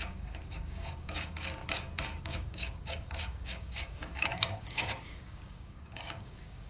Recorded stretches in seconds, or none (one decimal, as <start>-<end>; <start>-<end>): 1.6-2.2